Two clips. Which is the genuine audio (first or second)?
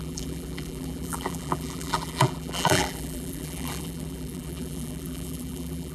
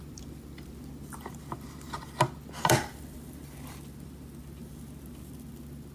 second